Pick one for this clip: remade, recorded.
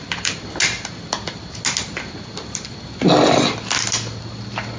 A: recorded